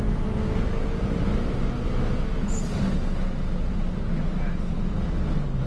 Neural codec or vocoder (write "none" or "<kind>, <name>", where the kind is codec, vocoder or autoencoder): none